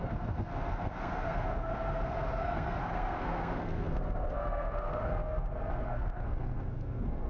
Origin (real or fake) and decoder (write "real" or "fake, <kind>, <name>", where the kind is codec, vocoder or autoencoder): fake, codec, SNAC